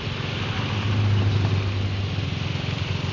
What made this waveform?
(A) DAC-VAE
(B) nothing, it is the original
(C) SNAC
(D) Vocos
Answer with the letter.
B